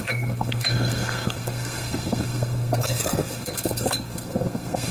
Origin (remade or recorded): remade